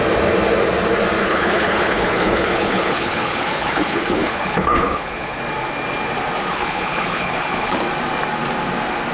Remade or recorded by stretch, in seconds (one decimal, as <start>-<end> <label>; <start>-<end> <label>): 0.0-1.2 recorded; 1.2-5.4 remade; 5.4-6.5 recorded; 6.5-7.8 remade; 7.8-9.1 recorded